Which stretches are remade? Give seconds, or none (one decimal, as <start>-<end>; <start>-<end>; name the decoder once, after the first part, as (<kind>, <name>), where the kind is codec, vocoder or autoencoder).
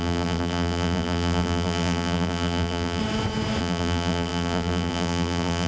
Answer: 0.0-3.0 (vocoder, BigVGAN v2); 3.6-5.7